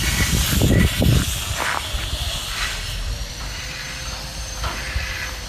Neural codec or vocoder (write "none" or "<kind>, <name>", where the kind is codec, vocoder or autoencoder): vocoder, BigVGAN v2